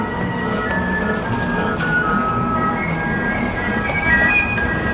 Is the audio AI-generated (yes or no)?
no